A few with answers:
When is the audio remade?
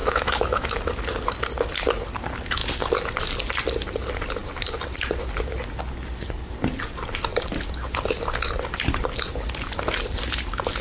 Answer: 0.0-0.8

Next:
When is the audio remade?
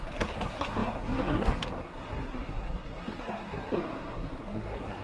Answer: 0.0-5.0